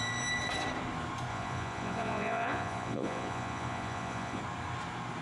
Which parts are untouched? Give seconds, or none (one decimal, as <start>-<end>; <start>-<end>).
0.0-1.3; 4.4-5.2